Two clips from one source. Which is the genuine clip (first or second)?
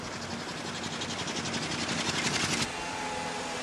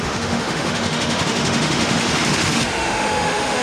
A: first